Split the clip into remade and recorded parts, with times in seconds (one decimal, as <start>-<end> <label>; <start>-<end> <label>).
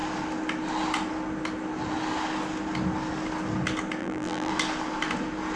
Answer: 0.0-4.0 recorded; 4.0-4.5 remade; 4.5-5.6 recorded